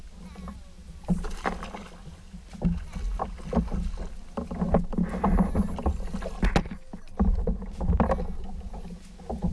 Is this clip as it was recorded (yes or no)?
yes